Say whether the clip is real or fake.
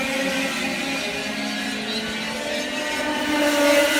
real